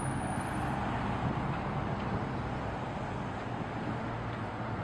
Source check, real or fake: real